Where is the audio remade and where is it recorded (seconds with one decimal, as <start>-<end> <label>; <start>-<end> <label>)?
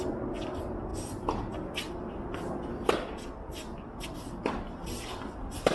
0.0-5.7 recorded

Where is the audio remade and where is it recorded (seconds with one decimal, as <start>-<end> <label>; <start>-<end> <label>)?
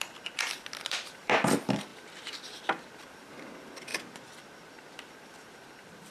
0.0-1.9 remade; 1.9-3.0 recorded; 3.0-3.9 remade; 3.9-5.1 recorded; 5.1-6.1 remade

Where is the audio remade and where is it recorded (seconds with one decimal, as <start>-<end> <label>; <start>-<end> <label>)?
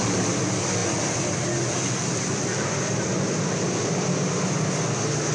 0.0-5.3 recorded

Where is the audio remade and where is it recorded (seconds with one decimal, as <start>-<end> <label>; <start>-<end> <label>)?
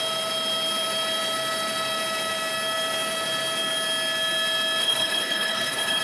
0.0-4.8 recorded; 4.8-6.0 remade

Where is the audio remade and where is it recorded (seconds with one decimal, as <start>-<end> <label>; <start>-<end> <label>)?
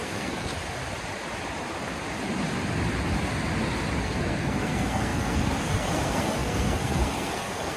0.0-0.5 remade; 0.5-4.0 recorded; 4.0-7.8 remade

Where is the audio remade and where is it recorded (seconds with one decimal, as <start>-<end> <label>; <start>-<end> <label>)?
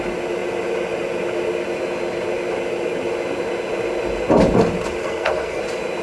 0.0-5.0 recorded; 5.0-5.6 remade; 5.6-6.0 recorded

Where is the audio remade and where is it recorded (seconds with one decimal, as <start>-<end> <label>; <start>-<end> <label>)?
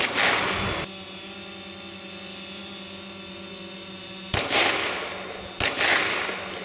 0.0-6.6 recorded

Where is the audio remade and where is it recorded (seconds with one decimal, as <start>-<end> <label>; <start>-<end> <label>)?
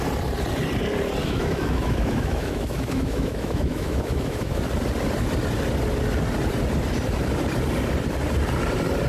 0.0-1.2 recorded; 1.2-4.6 remade; 4.6-9.1 recorded